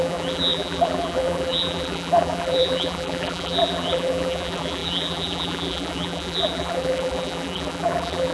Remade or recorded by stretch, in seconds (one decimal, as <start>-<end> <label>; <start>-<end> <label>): 0.0-8.3 remade